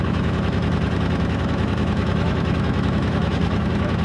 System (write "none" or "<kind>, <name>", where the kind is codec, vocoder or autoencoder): autoencoder, DAC-VAE